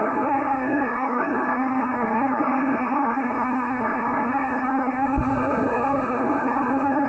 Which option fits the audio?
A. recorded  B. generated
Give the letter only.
B